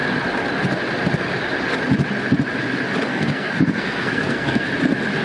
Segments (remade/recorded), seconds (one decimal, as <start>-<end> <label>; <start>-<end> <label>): 0.0-3.1 recorded; 3.1-4.7 remade; 4.7-5.2 recorded